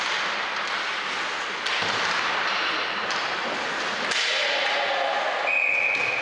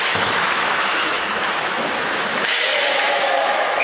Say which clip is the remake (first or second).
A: second